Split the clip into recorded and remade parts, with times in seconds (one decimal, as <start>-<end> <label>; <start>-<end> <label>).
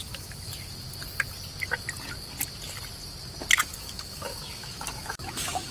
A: 0.0-0.5 remade; 0.5-3.6 recorded; 3.6-5.7 remade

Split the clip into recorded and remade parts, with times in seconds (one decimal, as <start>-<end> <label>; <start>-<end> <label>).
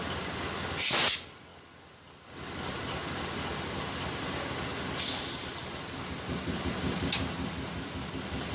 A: 0.0-8.5 recorded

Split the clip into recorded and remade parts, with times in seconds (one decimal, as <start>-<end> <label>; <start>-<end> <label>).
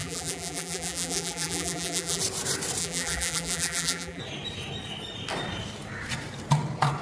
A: 0.0-2.2 remade; 2.2-2.8 recorded; 2.8-4.2 remade; 4.2-7.0 recorded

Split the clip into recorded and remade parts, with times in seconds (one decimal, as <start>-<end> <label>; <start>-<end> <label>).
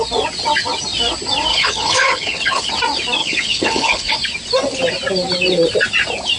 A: 0.0-1.5 recorded; 1.5-2.7 remade; 2.7-3.2 recorded; 3.2-4.1 remade; 4.1-6.4 recorded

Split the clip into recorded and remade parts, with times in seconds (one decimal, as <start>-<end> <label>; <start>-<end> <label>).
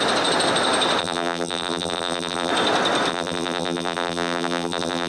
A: 0.0-1.0 recorded; 1.0-2.5 remade; 2.5-3.1 recorded; 3.1-5.1 remade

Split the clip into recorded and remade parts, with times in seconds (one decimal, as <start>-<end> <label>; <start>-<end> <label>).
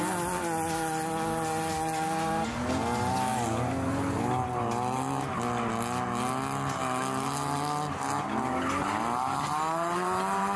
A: 0.0-10.6 recorded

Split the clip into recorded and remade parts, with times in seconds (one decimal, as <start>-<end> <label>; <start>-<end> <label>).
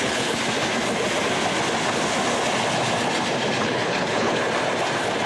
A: 0.0-0.4 remade; 0.4-3.6 recorded; 3.6-4.4 remade; 4.4-5.3 recorded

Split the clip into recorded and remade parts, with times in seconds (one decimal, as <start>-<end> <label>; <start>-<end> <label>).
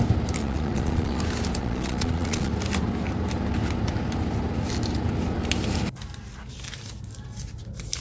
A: 0.0-0.4 recorded; 0.4-1.2 remade; 1.2-1.6 recorded; 1.6-2.5 remade; 2.5-8.0 recorded